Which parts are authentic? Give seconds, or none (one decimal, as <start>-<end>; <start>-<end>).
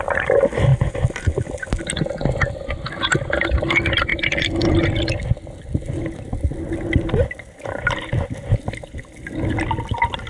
0.0-10.3